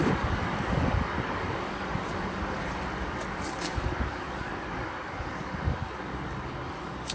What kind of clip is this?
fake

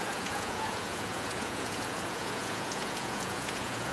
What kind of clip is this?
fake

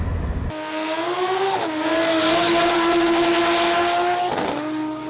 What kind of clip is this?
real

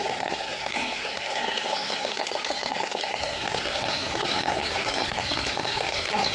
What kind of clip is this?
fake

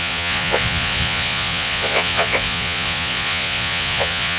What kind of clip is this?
fake